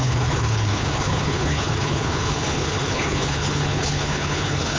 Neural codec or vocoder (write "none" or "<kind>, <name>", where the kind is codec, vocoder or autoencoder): codec, HILCodec